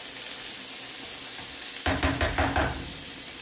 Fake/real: real